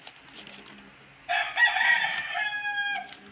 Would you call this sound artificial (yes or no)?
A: no